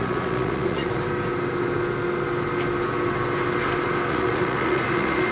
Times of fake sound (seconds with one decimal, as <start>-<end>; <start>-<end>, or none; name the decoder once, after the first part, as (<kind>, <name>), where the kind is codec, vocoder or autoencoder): 0.0-1.0 (vocoder, Vocos); 4.1-5.3